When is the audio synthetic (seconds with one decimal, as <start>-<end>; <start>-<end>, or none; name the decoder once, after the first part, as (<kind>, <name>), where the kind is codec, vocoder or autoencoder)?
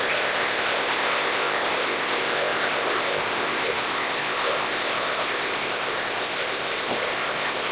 0.0-7.7 (codec, ZipCodec)